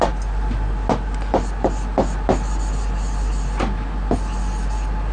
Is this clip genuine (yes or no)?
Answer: yes